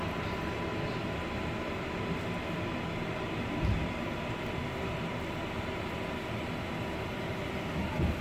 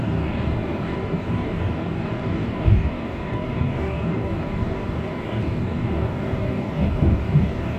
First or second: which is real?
first